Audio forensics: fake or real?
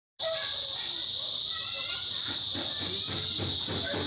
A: real